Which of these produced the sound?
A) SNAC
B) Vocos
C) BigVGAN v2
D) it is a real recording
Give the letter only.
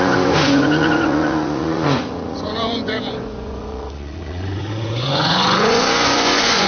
B